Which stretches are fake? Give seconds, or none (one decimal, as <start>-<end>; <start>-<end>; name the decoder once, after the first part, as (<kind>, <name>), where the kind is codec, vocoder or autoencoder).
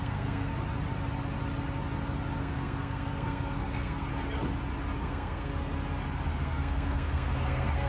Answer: 0.0-0.5 (codec, SNAC); 2.4-4.1; 5.0-5.5; 6.3-7.9